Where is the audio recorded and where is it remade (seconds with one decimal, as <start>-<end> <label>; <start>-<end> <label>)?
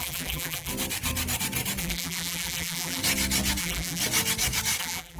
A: 0.0-0.7 remade; 0.7-1.8 recorded; 1.8-3.0 remade; 3.0-3.6 recorded; 3.6-4.0 remade; 4.0-4.8 recorded; 4.8-5.2 remade